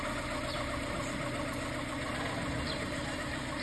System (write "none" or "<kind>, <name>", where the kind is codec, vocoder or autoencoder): none